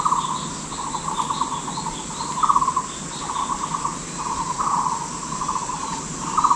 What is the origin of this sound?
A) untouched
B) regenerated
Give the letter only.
A